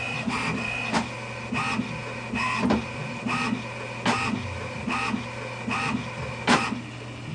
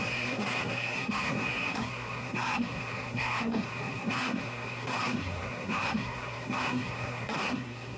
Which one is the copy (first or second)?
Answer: second